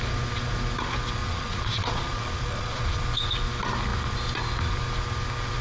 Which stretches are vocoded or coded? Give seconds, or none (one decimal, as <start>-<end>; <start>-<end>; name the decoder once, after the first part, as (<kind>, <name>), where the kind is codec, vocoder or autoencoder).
1.2-3.0 (vocoder, Vocos)